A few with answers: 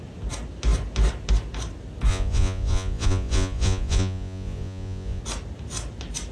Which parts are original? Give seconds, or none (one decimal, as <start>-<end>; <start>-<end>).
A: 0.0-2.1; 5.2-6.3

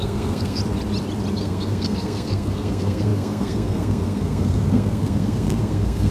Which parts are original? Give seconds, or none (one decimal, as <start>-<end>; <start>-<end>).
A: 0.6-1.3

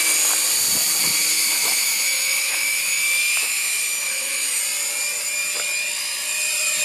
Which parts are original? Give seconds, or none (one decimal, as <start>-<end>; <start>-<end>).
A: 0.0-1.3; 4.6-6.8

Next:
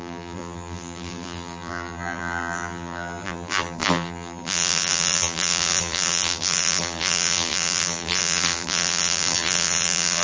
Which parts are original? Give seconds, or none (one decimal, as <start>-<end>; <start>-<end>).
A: none